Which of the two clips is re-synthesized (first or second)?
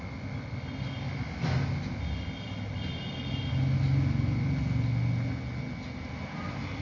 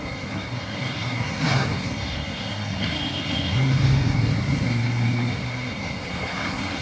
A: second